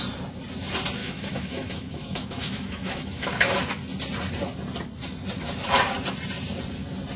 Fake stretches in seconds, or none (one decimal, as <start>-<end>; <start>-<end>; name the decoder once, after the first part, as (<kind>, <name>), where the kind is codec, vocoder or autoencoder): 1.0-3.3 (autoencoder, DAC-VAE)